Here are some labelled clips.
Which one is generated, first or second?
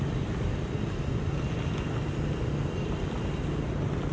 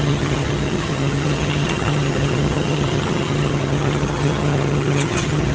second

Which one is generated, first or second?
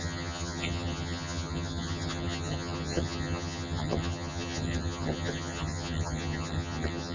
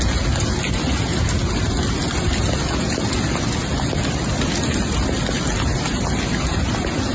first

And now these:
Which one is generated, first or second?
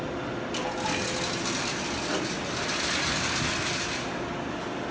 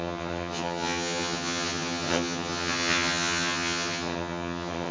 second